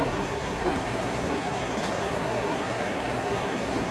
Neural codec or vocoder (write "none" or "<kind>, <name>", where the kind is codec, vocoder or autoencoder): codec, SNAC